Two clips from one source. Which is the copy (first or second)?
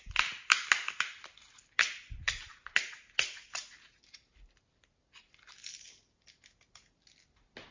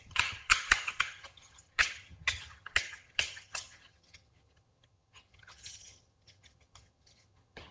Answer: second